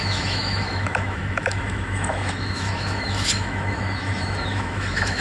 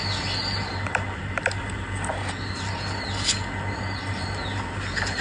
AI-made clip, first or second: first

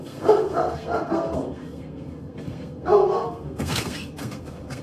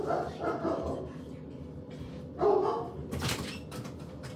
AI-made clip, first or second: first